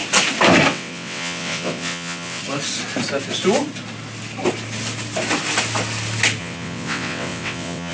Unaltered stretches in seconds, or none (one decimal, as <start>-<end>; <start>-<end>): 0.0-0.7; 2.4-6.4